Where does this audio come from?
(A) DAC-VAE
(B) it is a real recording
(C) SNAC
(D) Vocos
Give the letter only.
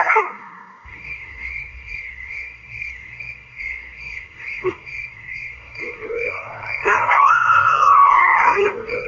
C